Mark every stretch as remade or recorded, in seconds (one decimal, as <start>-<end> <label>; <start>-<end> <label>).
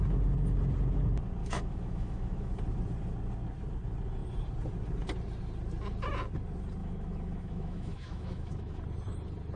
0.0-1.4 recorded; 1.4-2.5 remade; 2.5-6.8 recorded; 6.8-8.8 remade; 8.8-9.6 recorded